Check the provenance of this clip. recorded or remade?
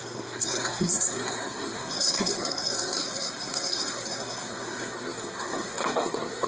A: remade